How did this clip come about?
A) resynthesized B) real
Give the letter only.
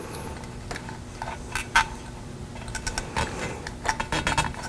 B